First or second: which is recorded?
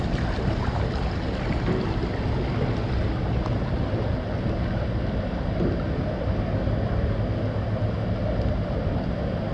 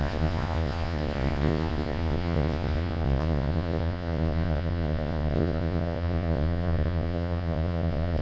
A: first